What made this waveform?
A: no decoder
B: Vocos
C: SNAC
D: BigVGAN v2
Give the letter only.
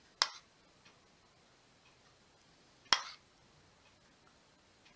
A